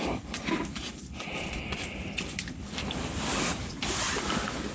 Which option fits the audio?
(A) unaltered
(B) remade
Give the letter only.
A